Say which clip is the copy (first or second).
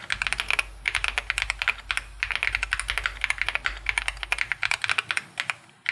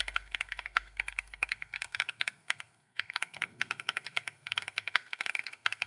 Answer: second